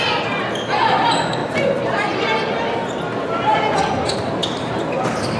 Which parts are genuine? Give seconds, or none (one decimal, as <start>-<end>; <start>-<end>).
0.0-4.4